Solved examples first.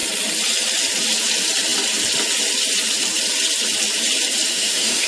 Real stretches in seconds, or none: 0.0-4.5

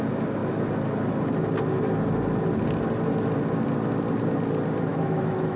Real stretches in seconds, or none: 0.0-4.9

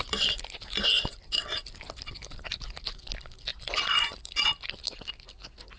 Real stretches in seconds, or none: 0.0-3.5; 4.2-5.8